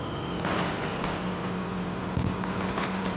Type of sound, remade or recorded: recorded